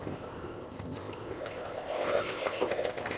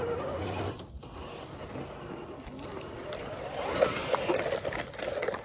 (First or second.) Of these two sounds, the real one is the second